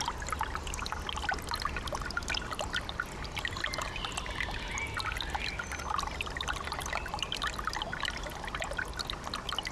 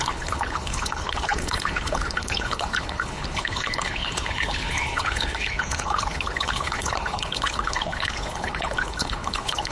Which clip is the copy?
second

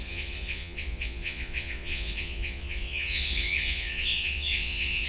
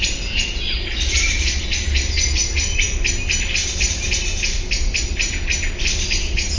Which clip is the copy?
first